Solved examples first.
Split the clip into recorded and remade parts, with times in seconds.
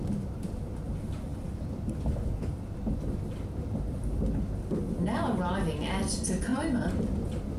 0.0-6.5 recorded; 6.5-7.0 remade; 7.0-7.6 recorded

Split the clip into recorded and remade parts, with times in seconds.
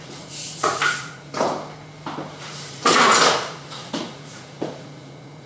0.0-1.5 remade; 1.5-2.4 recorded; 2.4-5.5 remade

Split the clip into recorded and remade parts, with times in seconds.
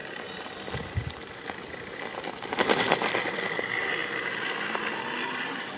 0.0-5.8 recorded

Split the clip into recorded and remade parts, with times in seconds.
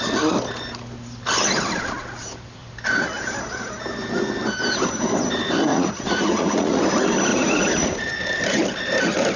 0.0-5.7 recorded; 5.7-6.8 remade; 6.8-7.3 recorded; 7.3-8.1 remade; 8.1-9.4 recorded